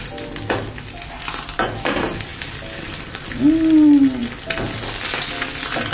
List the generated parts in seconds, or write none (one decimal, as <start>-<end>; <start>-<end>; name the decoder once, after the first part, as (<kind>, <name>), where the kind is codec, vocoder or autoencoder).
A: none